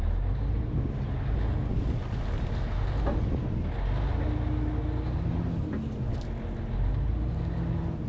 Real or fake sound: real